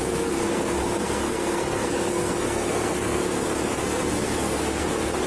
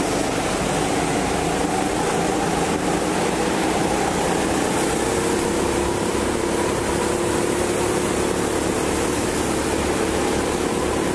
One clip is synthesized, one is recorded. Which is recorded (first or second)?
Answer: second